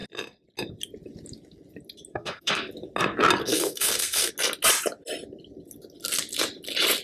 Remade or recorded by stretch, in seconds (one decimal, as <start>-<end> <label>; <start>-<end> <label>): 0.0-2.1 recorded; 2.1-2.7 remade; 2.7-3.4 recorded; 3.4-4.3 remade; 4.3-7.0 recorded